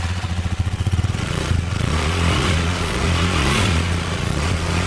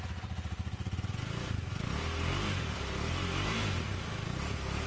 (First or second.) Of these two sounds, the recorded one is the second